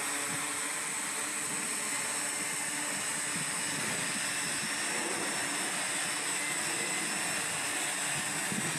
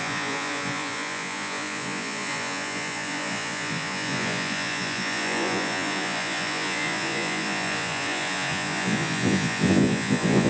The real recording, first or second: first